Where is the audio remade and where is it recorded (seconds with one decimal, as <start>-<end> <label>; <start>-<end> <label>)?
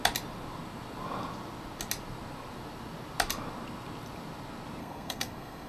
0.0-4.8 recorded; 4.8-5.7 remade